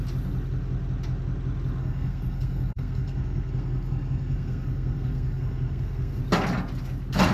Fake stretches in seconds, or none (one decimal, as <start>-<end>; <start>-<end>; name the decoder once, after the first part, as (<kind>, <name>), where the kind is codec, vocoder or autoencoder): 1.8-6.2 (codec, SNAC)